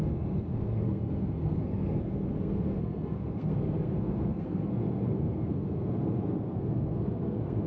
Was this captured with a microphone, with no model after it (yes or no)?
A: no